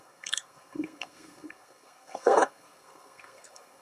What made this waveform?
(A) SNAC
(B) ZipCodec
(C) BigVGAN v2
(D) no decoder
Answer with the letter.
A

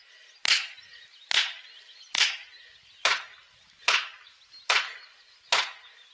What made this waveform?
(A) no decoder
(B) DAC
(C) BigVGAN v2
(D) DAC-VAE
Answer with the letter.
A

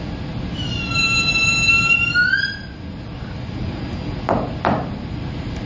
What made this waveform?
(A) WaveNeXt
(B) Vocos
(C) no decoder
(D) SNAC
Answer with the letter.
C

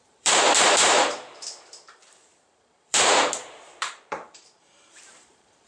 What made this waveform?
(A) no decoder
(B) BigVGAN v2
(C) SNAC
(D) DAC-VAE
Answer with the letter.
B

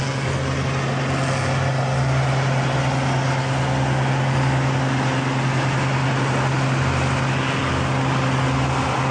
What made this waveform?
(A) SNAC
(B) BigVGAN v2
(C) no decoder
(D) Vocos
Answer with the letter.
C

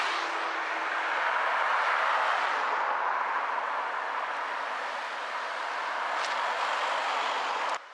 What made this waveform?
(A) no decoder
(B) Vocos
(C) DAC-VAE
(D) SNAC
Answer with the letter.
A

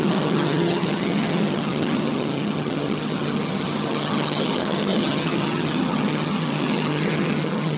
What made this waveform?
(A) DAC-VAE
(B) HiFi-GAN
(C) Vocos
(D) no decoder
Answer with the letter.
B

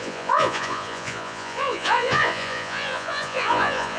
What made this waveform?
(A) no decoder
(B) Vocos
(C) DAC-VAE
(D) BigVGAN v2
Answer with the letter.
B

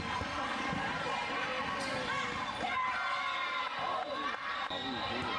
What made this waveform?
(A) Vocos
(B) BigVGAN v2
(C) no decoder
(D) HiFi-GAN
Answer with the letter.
C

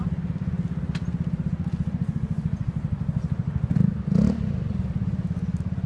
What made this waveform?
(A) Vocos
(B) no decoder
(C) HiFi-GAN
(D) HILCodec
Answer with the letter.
B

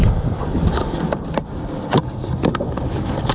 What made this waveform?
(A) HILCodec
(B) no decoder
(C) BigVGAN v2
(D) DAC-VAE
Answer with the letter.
B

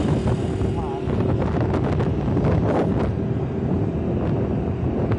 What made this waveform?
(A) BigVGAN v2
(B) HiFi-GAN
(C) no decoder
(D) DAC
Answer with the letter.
C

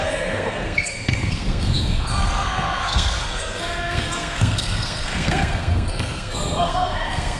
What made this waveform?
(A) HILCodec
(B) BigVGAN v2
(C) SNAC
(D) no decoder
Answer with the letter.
C